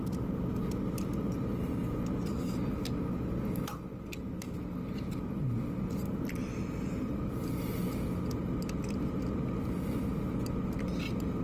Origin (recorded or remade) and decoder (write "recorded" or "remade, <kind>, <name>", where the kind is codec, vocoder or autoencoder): recorded